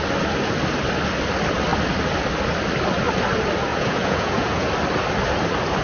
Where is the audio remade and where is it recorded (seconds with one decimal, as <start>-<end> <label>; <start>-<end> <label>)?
0.0-3.7 recorded; 3.7-4.7 remade; 4.7-5.8 recorded